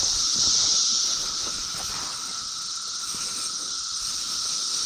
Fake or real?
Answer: real